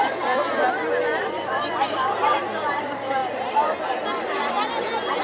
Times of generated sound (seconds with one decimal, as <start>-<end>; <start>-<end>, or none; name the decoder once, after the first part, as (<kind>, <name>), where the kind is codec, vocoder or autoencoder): none